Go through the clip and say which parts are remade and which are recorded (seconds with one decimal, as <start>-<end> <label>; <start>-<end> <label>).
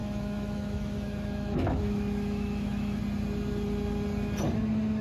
0.0-3.0 remade; 3.0-5.0 recorded